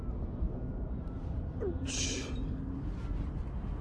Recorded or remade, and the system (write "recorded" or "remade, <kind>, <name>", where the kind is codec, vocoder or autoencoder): recorded